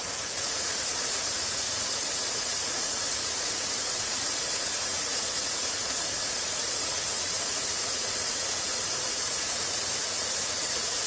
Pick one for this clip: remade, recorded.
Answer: remade